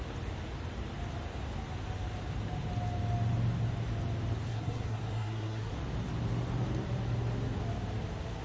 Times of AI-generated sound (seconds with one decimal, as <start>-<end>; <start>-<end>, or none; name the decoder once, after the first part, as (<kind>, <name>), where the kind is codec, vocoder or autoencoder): 4.5-5.7 (codec, SNAC)